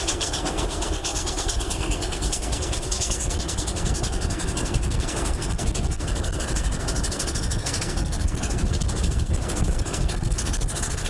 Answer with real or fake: fake